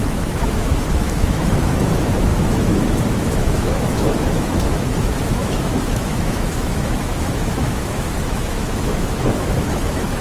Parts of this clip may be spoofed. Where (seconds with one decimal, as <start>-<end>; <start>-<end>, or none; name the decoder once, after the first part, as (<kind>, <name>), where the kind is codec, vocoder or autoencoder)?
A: 0.0-10.2 (autoencoder, DAC-VAE)